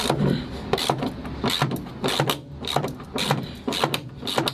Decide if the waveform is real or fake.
real